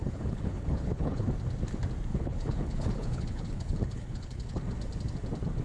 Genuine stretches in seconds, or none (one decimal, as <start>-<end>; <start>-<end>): 1.3-2.1; 4.6-5.6